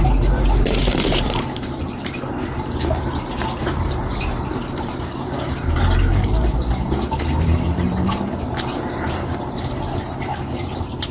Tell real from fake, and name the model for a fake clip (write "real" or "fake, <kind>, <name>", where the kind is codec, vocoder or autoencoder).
fake, vocoder, BigVGAN v2